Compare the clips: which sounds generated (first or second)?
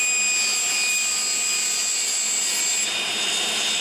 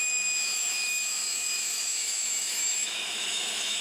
second